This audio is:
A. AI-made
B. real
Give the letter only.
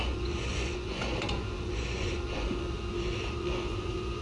A